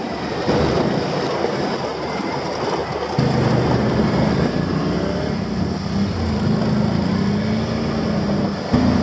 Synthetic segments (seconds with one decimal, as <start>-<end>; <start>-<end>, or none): none